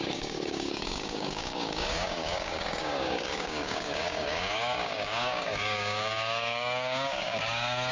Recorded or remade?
remade